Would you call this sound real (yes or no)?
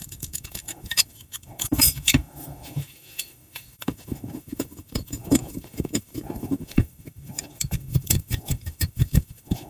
no